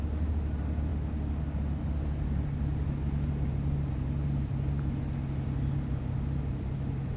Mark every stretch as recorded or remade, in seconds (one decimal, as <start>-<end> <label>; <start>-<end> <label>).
0.0-7.2 recorded